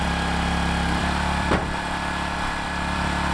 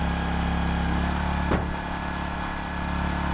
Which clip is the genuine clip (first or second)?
second